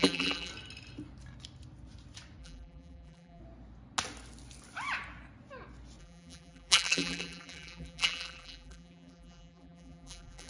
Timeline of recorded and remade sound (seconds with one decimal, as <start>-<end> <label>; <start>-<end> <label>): 0.0-0.5 remade; 0.5-2.4 recorded; 2.4-3.4 remade; 3.4-6.0 recorded; 6.0-10.5 remade